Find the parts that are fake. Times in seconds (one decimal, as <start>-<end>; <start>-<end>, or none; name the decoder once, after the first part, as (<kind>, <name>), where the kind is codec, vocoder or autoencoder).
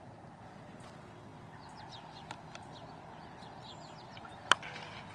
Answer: none